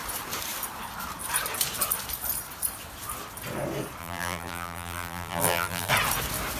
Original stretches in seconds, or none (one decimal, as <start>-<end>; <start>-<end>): 0.0-4.0; 5.9-6.6